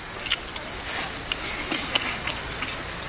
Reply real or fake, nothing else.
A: real